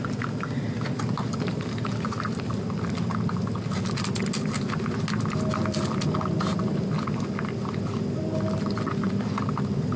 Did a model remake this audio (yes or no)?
no